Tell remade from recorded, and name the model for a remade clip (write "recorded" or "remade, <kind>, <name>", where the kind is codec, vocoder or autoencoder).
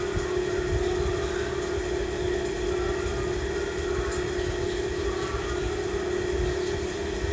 recorded